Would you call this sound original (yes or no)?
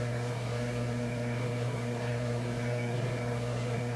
no